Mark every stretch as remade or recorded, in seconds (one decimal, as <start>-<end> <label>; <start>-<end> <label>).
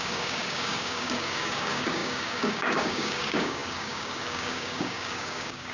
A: 0.0-5.7 remade